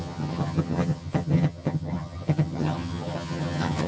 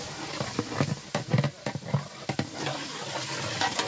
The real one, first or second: second